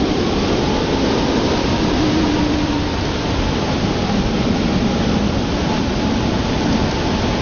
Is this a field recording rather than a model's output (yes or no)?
yes